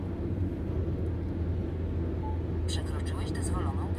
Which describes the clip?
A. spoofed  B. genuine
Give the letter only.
B